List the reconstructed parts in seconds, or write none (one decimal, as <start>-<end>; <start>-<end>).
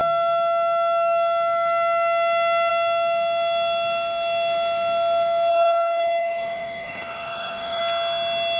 5.5-7.8